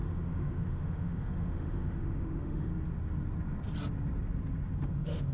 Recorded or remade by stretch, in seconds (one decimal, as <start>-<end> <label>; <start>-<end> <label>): 0.0-2.7 remade; 2.7-4.8 recorded; 4.8-5.3 remade